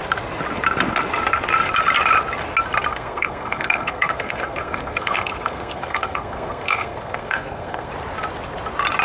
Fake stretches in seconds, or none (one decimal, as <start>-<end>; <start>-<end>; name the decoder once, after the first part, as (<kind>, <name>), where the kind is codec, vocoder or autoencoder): 2.9-7.9 (codec, SNAC)